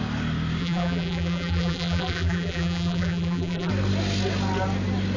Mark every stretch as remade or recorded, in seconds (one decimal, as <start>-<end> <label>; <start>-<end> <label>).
0.0-0.6 recorded; 0.6-3.7 remade; 3.7-5.2 recorded